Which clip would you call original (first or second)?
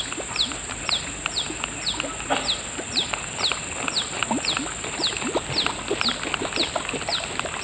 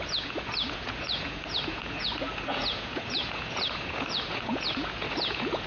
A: first